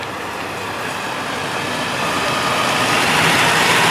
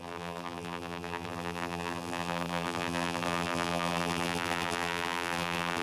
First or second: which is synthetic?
second